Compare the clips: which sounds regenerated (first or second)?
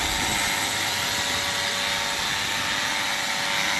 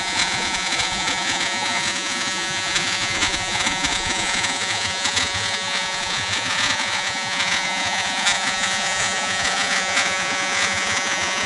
second